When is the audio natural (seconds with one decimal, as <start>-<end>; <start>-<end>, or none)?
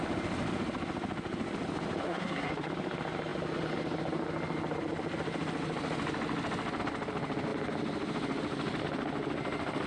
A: 0.0-2.0; 2.7-9.9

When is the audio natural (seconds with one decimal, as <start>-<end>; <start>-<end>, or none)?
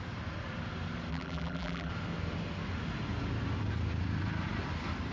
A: 0.0-1.1; 1.9-5.1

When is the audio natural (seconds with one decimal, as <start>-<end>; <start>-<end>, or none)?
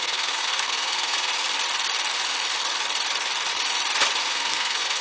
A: 1.3-4.3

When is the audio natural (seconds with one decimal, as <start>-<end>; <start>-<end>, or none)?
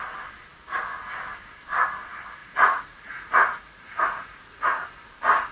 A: 0.0-2.4; 4.9-5.5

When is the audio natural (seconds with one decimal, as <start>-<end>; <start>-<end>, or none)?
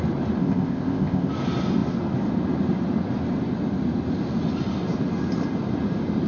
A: 0.0-0.4; 1.3-6.3